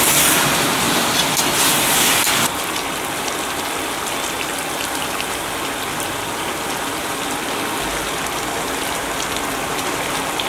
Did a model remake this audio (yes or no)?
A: no